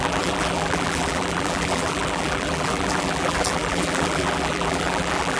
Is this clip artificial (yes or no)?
yes